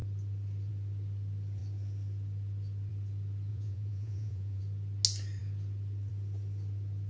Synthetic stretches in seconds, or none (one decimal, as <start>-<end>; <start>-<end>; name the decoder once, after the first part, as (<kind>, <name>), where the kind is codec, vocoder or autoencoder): 3.5-4.6 (vocoder, Vocos)